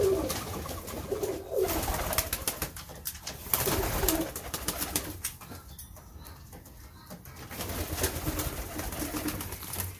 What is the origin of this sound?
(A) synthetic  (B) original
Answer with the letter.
B